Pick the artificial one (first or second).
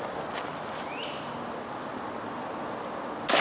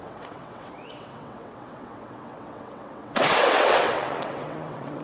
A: second